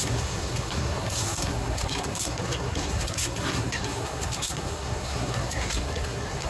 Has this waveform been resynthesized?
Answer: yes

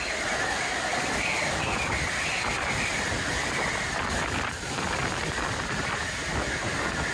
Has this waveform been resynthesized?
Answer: no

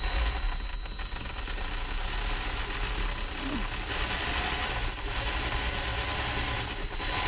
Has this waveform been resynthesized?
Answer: no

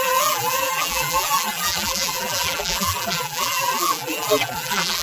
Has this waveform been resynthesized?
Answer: yes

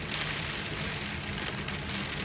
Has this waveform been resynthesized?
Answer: no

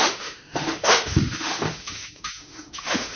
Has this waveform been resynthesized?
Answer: yes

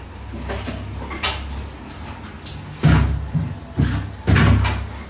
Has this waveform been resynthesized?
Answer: no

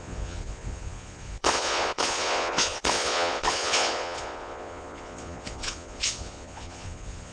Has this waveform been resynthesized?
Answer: yes